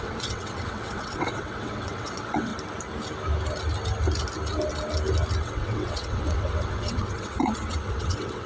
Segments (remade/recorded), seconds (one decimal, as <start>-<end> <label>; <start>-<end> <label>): 0.0-2.5 remade; 2.5-5.4 recorded; 5.4-8.5 remade